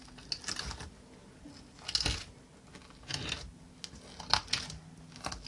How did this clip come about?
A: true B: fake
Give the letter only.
A